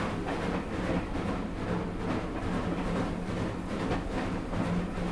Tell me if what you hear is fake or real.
real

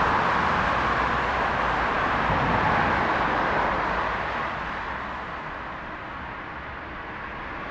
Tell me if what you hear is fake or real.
real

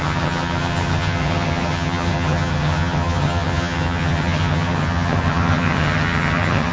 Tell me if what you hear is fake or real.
fake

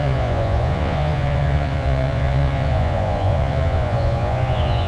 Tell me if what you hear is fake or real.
fake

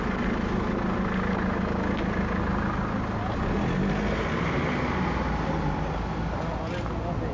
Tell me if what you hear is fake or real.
real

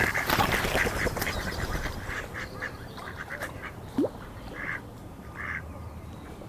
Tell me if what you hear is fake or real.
fake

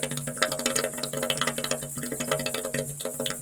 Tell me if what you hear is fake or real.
real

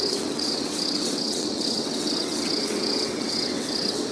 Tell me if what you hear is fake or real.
fake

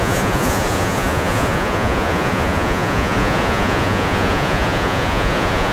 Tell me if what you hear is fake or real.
fake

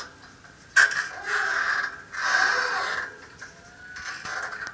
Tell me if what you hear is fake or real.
real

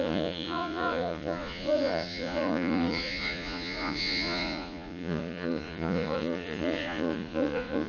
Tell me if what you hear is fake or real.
fake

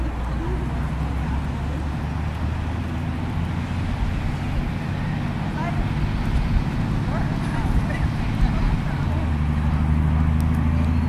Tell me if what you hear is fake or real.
real